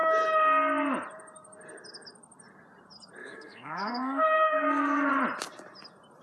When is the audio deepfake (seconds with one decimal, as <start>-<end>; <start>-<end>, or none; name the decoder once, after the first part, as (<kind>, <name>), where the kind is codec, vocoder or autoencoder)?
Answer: 3.2-5.1 (codec, SNAC)